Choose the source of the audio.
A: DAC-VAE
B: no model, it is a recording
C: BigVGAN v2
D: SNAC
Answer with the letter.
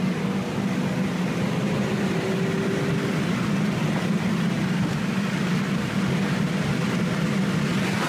B